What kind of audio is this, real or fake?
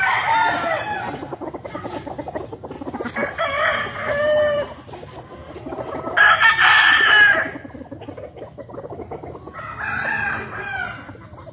real